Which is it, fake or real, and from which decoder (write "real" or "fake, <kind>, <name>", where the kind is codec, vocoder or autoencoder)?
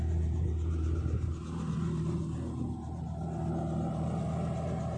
real